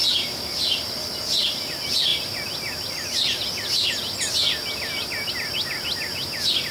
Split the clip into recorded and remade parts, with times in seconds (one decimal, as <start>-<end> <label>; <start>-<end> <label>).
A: 0.0-6.7 recorded